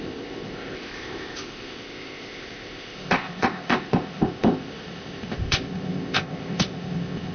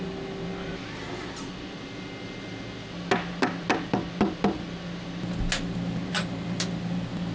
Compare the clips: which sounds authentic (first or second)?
second